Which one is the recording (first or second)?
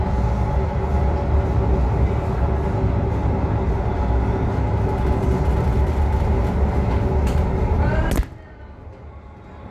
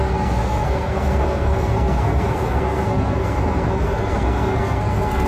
first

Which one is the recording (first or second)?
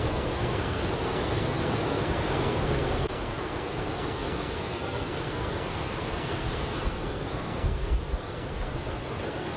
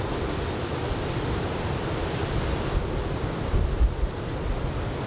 second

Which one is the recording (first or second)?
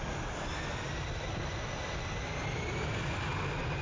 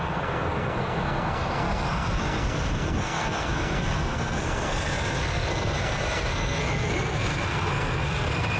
first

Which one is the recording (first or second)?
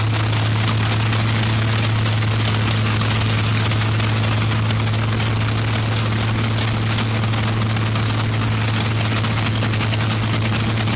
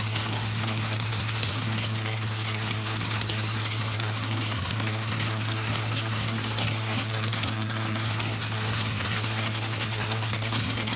first